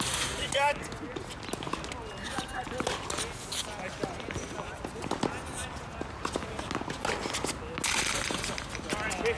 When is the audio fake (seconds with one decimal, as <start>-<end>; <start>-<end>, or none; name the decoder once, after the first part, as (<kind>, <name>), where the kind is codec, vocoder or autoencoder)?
none